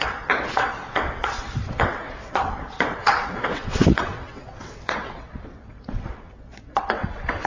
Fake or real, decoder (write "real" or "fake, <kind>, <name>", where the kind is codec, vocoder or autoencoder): fake, vocoder, WaveNeXt